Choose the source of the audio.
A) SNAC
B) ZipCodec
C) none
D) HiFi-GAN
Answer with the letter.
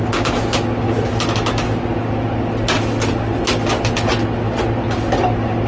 C